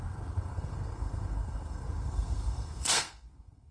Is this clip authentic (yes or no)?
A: no